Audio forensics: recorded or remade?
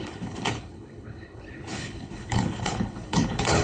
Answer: remade